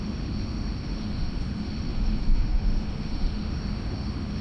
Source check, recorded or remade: remade